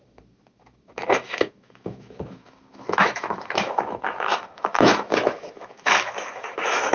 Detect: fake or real fake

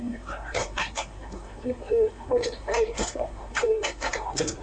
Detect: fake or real fake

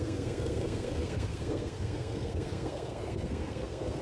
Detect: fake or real fake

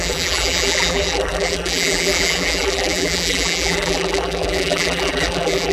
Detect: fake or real fake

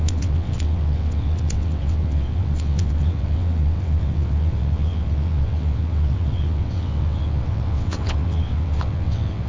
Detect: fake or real fake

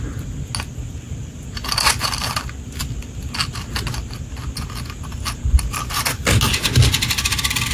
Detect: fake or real real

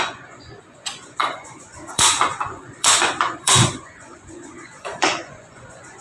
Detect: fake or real fake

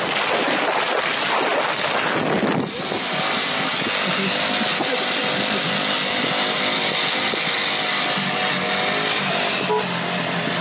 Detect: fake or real real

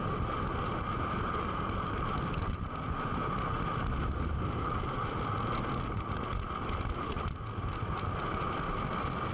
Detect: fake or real real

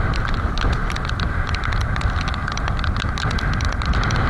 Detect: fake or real real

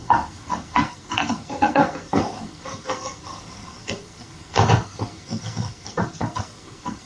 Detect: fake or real fake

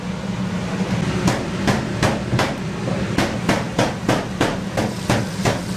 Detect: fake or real real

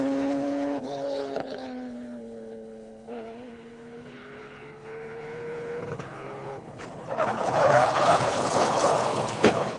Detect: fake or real fake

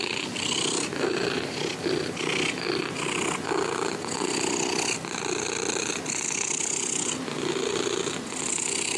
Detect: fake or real real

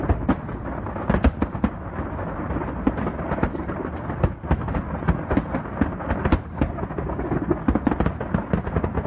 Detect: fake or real real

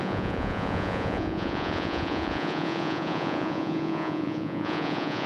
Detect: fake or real fake